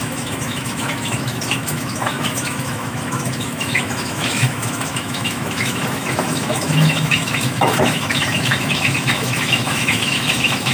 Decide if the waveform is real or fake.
fake